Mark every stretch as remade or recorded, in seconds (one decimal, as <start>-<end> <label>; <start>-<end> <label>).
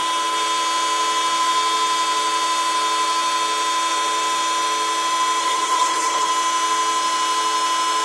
0.0-5.4 recorded; 5.4-6.3 remade; 6.3-8.0 recorded